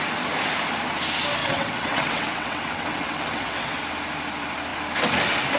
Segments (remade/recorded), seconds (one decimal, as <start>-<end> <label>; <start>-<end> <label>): 0.0-1.4 recorded; 1.4-3.8 remade; 3.8-5.6 recorded